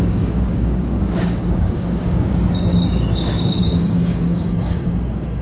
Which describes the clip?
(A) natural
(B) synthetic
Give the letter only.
B